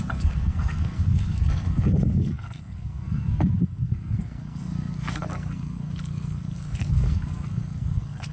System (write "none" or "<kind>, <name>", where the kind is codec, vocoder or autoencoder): codec, SNAC